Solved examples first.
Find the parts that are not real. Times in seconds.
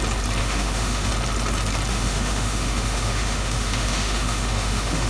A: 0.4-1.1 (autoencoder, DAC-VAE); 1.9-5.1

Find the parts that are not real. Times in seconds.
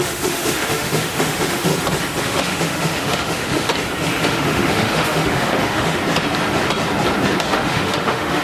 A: 0.0-1.7 (autoencoder, DAC-VAE); 2.2-3.7; 4.2-6.0; 7.4-8.4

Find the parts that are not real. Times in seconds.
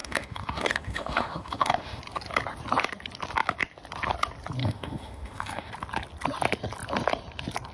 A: 0.0-2.0 (autoencoder, DAC-VAE); 4.6-5.7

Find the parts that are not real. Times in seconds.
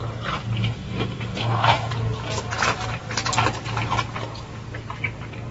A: 0.6-1.9 (autoencoder, DAC-VAE)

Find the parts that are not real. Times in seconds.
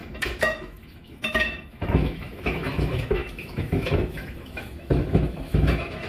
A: 0.0-6.1 (autoencoder, DAC-VAE)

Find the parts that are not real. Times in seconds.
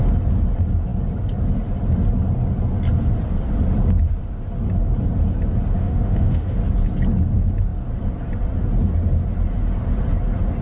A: 5.8-6.6 (autoencoder, DAC-VAE)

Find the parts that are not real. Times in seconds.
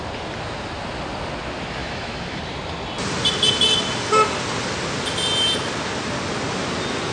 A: 1.8-2.4 (autoencoder, DAC-VAE)